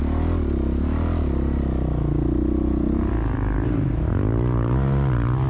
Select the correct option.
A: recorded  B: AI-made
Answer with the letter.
A